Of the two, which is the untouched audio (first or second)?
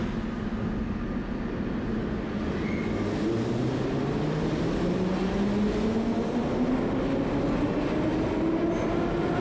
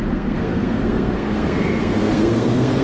first